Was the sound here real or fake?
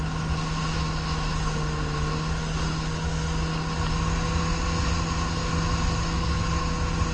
real